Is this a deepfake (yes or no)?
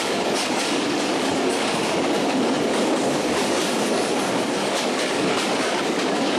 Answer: yes